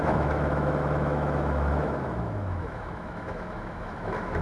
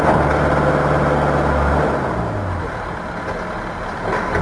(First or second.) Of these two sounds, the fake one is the first